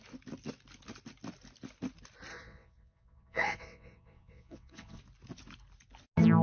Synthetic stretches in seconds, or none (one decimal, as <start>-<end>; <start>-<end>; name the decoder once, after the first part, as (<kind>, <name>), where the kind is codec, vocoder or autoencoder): 2.3-5.0 (vocoder, WaveNeXt)